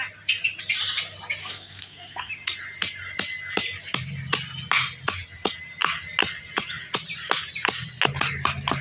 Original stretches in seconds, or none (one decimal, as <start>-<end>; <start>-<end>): 0.0-1.4; 2.3-8.8